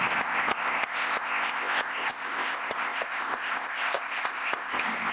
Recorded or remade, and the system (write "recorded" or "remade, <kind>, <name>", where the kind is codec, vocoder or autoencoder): remade, codec, ZipCodec